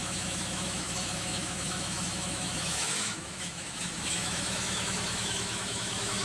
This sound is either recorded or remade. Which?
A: remade